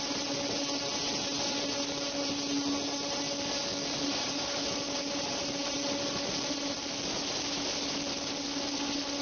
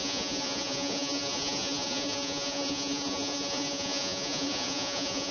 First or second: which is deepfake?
second